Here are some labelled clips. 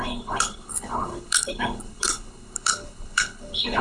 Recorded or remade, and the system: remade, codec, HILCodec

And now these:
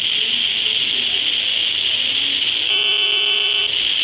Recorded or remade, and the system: recorded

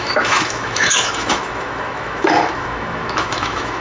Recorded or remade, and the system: remade, autoencoder, DAC-VAE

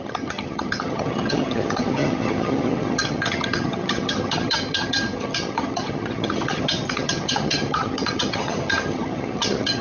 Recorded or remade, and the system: remade, vocoder, HiFi-GAN